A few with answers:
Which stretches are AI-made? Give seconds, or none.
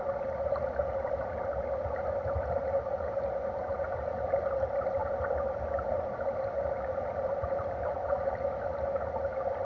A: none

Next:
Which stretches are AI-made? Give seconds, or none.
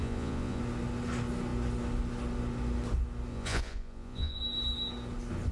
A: 0.0-0.6 (vocoder, Vocos); 3.3-4.4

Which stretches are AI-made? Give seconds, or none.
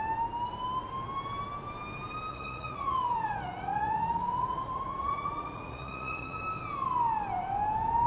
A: 2.3-6.4 (vocoder, Vocos)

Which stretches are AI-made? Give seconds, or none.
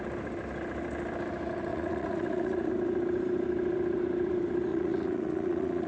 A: 1.7-2.7 (vocoder, Vocos); 4.7-5.9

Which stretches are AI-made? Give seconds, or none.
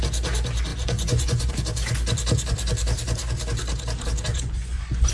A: 0.7-1.5 (vocoder, Vocos); 4.3-5.1